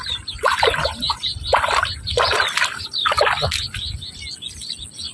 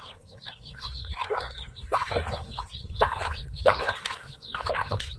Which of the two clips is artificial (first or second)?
second